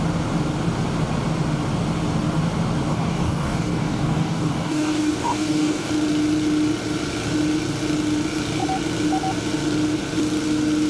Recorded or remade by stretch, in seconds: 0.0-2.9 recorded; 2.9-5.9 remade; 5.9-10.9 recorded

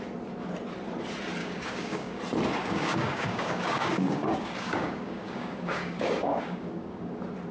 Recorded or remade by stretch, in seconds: 0.0-1.4 recorded; 1.4-2.2 remade; 2.2-2.6 recorded; 2.6-7.1 remade; 7.1-7.5 recorded

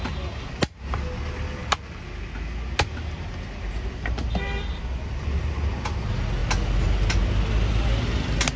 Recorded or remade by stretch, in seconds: 0.0-8.6 recorded

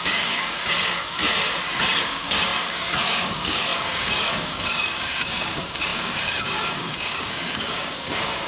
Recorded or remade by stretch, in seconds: 0.0-1.2 remade; 1.2-1.8 recorded; 1.8-8.5 remade

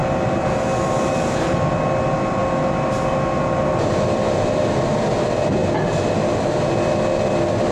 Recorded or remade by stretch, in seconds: 0.0-7.7 recorded

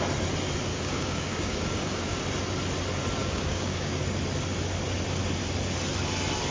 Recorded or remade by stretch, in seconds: 0.0-0.7 recorded; 0.7-2.2 remade; 2.2-3.2 recorded; 3.2-4.0 remade; 4.0-6.5 recorded